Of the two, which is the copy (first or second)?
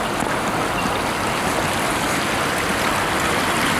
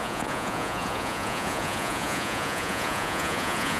second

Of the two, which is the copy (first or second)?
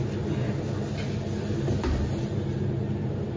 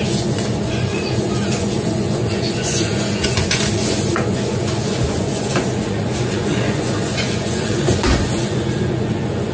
second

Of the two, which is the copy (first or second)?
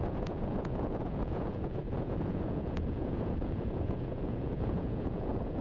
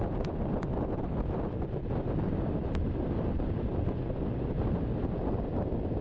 first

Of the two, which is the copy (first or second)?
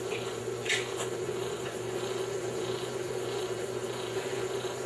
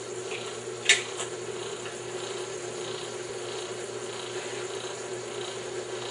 first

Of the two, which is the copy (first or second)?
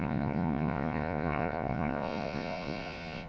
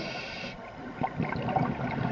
first